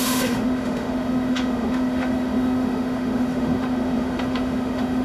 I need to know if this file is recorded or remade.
remade